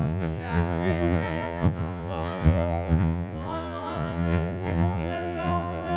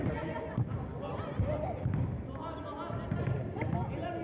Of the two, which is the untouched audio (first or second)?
second